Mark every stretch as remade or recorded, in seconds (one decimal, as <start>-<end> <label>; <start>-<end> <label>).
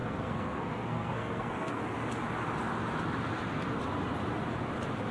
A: 0.0-1.8 remade; 1.8-5.1 recorded